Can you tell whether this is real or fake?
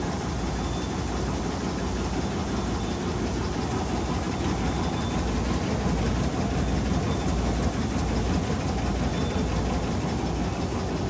real